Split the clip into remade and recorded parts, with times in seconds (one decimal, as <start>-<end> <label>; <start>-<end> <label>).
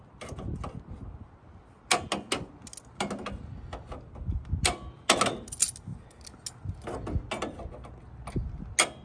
0.0-9.0 recorded